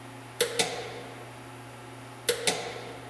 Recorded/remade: recorded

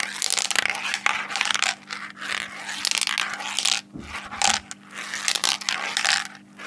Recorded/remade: recorded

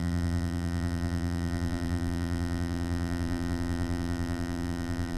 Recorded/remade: remade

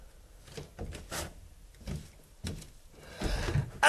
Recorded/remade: recorded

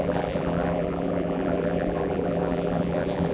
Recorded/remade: remade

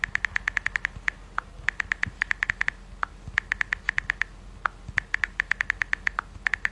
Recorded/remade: recorded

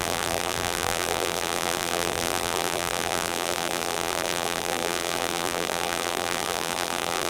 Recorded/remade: remade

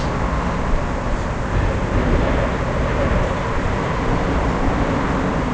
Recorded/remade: remade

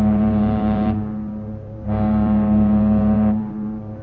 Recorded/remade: remade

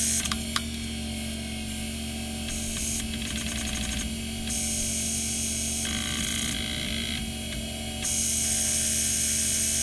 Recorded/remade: recorded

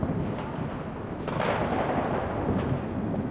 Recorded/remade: recorded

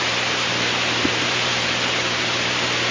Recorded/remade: remade